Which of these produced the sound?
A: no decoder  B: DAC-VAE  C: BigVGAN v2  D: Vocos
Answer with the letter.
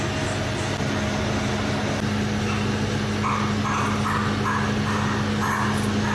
A